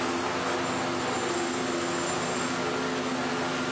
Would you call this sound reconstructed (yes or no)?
no